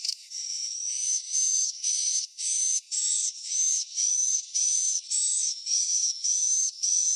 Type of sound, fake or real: fake